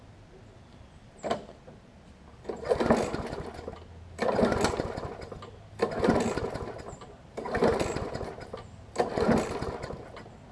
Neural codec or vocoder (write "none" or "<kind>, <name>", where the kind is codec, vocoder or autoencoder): none